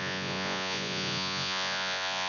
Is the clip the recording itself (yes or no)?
no